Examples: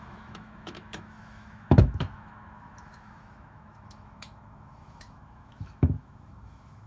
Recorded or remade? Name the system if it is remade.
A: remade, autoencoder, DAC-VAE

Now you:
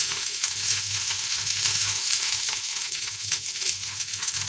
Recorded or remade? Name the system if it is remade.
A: remade, autoencoder, DAC-VAE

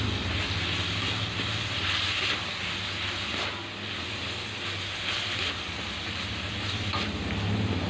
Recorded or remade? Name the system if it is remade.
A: recorded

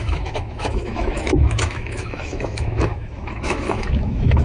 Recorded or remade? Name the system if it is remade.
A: remade, autoencoder, DAC-VAE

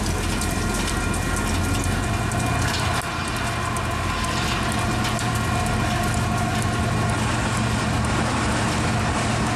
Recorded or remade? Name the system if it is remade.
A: recorded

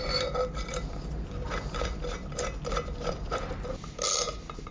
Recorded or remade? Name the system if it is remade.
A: recorded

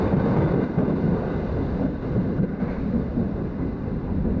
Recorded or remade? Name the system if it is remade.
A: recorded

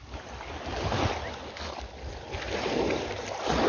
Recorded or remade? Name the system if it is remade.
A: recorded